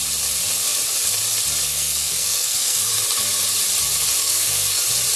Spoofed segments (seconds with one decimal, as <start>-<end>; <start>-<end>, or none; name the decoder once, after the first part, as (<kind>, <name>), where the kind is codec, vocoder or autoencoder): 1.6-2.9 (codec, SNAC); 4.2-4.8